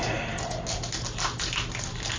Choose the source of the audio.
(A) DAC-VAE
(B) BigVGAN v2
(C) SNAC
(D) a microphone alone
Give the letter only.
D